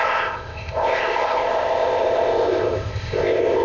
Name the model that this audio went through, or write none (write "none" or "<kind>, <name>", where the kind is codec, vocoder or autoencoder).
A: codec, ZipCodec